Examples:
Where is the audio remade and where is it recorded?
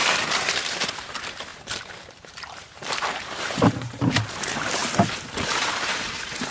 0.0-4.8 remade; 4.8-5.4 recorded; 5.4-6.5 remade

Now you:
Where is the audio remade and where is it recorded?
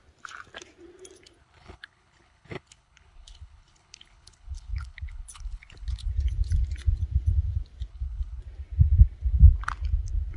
0.0-1.4 recorded; 1.4-6.1 remade; 6.1-7.9 recorded; 7.9-8.4 remade; 8.4-10.4 recorded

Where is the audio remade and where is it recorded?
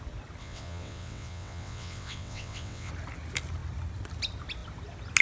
0.0-0.4 recorded; 0.4-2.9 remade; 2.9-5.2 recorded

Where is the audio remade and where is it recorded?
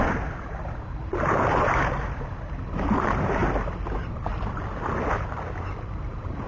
0.0-3.4 remade; 3.4-5.6 recorded; 5.6-6.5 remade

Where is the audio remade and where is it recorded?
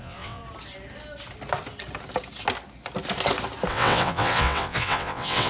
0.0-0.4 remade; 0.4-3.7 recorded; 3.7-5.5 remade